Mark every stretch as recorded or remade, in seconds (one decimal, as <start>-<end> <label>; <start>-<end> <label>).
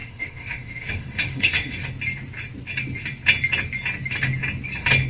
0.0-1.9 remade; 1.9-5.1 recorded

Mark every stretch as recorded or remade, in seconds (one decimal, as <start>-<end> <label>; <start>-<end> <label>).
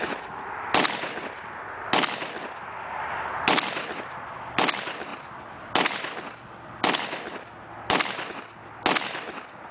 0.0-9.7 recorded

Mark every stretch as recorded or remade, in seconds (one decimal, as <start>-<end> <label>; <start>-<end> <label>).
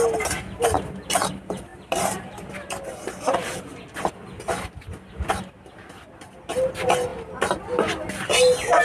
0.0-1.7 recorded; 1.7-4.1 remade; 4.1-8.8 recorded